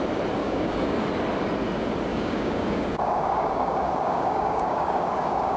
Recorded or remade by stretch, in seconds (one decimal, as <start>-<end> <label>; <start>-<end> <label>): 0.0-0.4 recorded; 0.4-1.0 remade; 1.0-2.1 recorded; 2.1-5.6 remade